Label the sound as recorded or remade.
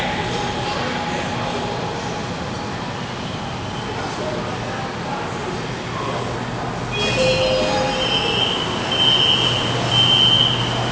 recorded